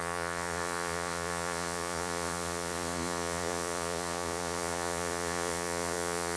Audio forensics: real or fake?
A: fake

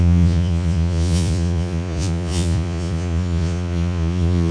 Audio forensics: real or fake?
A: fake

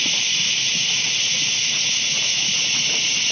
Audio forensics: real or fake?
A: fake